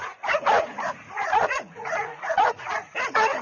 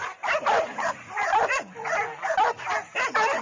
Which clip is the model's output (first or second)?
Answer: first